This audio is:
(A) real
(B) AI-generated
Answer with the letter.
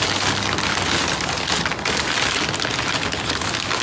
A